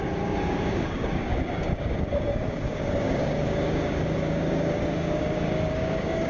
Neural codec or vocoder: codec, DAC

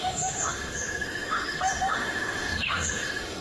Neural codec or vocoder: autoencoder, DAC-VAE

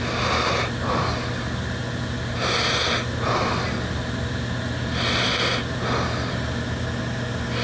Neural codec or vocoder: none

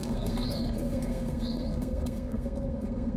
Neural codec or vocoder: codec, SNAC